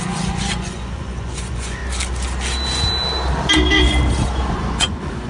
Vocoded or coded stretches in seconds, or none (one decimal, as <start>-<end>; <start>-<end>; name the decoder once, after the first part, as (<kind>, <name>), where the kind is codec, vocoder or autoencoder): 0.0-1.8 (vocoder, Vocos); 4.5-5.3